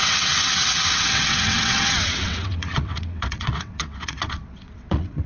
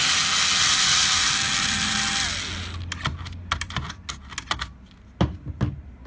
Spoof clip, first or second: first